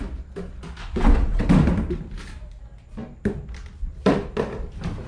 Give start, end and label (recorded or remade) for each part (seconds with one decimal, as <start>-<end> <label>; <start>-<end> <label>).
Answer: 0.0-0.8 recorded; 0.8-1.5 remade; 1.5-5.1 recorded